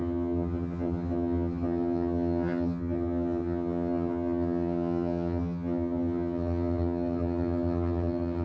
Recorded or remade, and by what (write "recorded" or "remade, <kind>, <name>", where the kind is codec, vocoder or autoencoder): remade, vocoder, HiFi-GAN